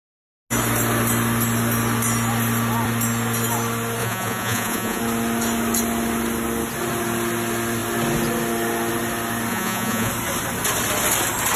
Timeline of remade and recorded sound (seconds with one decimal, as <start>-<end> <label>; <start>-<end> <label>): 0.0-4.0 recorded; 4.0-5.0 remade; 5.0-9.5 recorded; 9.5-10.1 remade; 10.1-11.6 recorded